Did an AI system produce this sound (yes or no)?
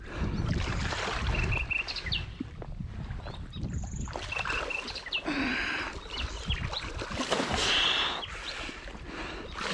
no